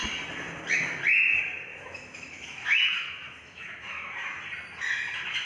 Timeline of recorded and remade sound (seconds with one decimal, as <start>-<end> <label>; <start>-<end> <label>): 0.0-1.7 recorded; 1.7-4.4 remade; 4.4-5.5 recorded